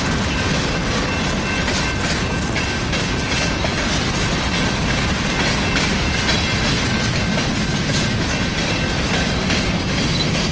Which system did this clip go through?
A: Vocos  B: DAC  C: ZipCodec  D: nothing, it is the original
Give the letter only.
D